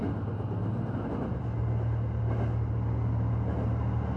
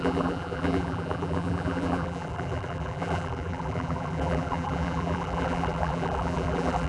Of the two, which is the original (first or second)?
first